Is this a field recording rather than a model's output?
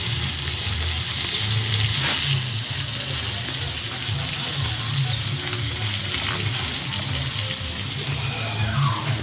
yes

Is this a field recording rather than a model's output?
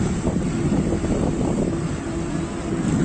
yes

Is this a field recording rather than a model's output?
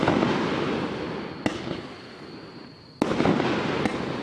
yes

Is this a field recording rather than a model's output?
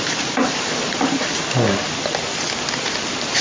yes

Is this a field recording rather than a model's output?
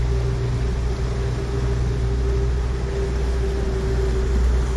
yes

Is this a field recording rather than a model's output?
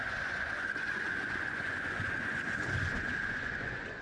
no